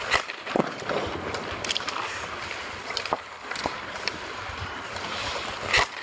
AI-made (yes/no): yes